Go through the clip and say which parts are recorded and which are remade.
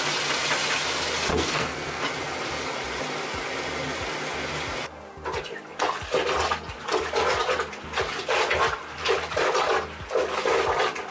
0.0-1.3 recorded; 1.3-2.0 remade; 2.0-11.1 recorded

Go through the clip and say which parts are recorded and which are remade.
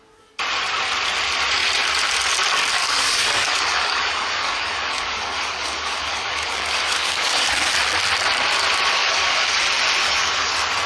0.0-2.8 recorded; 2.8-7.5 remade; 7.5-9.0 recorded; 9.0-9.6 remade; 9.6-10.0 recorded; 10.0-10.5 remade; 10.5-10.9 recorded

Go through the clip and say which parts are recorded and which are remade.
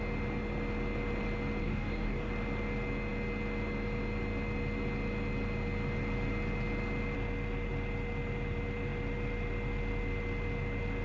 0.0-1.6 recorded; 1.6-2.3 remade; 2.3-11.0 recorded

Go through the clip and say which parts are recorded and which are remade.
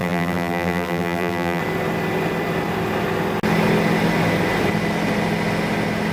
0.0-1.6 remade; 1.6-6.1 recorded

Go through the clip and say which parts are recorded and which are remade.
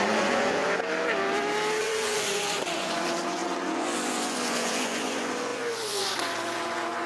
0.0-0.6 remade; 0.6-1.8 recorded; 1.8-7.1 remade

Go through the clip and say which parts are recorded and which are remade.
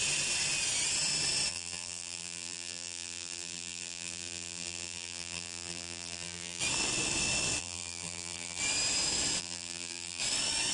0.0-1.5 recorded; 1.5-6.6 remade; 6.6-7.6 recorded; 7.6-8.6 remade; 8.6-9.4 recorded; 9.4-10.2 remade; 10.2-10.7 recorded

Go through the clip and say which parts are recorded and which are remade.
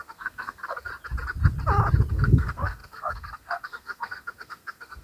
0.0-0.9 remade; 0.9-2.1 recorded; 2.1-5.0 remade